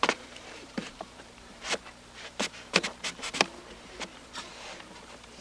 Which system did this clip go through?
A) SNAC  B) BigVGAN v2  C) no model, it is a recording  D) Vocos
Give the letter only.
B